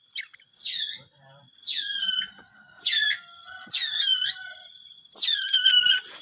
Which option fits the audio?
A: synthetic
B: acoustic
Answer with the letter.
A